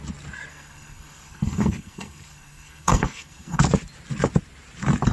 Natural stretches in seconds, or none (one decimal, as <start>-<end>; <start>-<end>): 0.0-0.5; 3.6-5.1